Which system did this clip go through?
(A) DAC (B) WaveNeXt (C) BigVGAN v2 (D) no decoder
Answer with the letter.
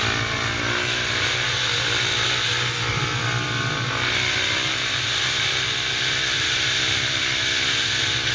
D